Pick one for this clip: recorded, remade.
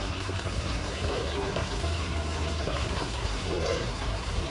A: remade